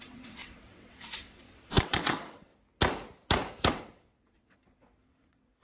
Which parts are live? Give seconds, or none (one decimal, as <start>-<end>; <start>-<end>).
2.5-3.7